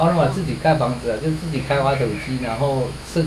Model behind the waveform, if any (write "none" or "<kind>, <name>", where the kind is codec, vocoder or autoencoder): autoencoder, DAC-VAE